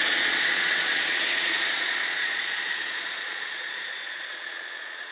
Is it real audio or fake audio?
fake